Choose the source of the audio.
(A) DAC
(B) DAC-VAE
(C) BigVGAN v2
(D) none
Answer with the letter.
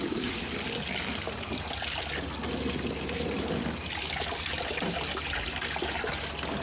D